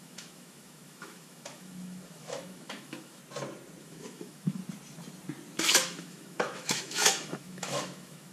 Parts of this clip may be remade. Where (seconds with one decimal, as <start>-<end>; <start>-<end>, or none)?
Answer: 0.0-3.2; 3.8-4.6; 5.6-8.3